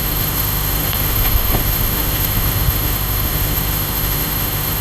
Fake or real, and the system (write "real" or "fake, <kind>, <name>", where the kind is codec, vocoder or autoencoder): fake, autoencoder, DAC-VAE